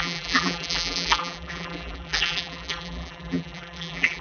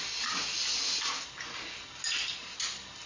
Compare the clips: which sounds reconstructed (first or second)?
first